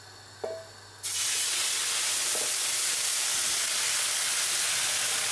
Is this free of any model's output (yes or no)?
yes